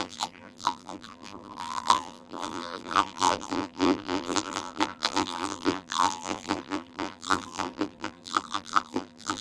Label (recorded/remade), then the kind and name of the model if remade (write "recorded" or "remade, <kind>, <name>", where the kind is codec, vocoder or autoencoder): remade, vocoder, BigVGAN v2